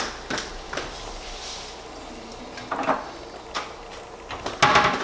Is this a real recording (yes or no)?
yes